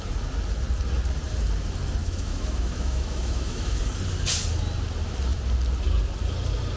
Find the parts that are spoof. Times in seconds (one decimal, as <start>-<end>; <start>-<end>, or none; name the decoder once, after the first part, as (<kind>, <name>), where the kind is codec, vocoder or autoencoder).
2.0-3.8 (autoencoder, DAC-VAE)